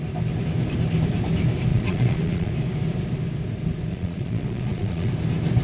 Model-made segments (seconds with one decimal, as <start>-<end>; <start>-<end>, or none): 1.7-2.5; 3.9-5.1